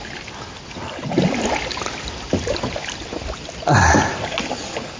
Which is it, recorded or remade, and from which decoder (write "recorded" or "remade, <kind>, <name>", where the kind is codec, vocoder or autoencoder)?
recorded